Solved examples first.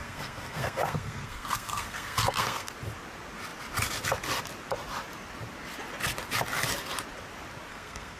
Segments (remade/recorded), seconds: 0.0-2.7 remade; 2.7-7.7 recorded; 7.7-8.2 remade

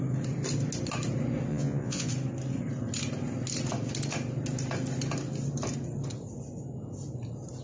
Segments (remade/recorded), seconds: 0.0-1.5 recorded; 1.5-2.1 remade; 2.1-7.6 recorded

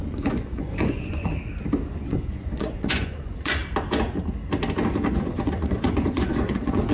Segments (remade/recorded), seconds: 0.0-1.3 remade; 1.3-1.9 recorded; 1.9-3.6 remade; 3.6-5.1 recorded; 5.1-6.9 remade

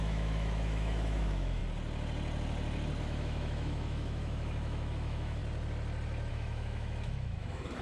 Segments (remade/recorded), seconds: 0.0-1.6 remade; 1.6-3.0 recorded; 3.0-5.4 remade; 5.4-6.3 recorded; 6.3-7.8 remade

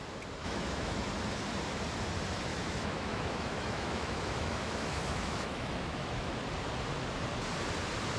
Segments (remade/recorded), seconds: 0.0-0.4 recorded; 0.4-1.1 remade; 1.1-2.5 recorded; 2.5-6.3 remade; 6.3-8.2 recorded

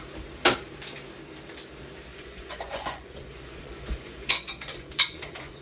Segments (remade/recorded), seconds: 0.0-2.1 recorded; 2.1-5.6 remade

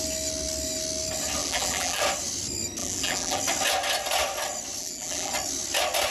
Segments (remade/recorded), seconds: 0.0-1.4 recorded; 1.4-2.0 remade; 2.0-2.8 recorded; 2.8-3.4 remade; 3.4-4.8 recorded; 4.8-5.3 remade; 5.3-6.1 recorded

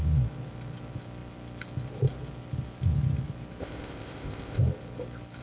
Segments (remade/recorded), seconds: 0.0-3.6 recorded; 3.6-4.6 remade; 4.6-5.4 recorded